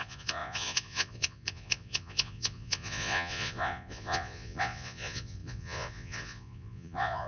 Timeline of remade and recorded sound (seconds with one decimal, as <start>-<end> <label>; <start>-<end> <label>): 0.0-7.3 remade